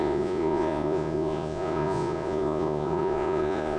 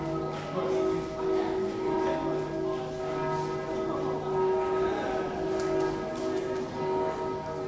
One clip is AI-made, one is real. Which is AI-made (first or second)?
first